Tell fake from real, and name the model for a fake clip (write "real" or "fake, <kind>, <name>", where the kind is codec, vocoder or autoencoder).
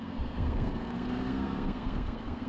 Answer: fake, codec, SNAC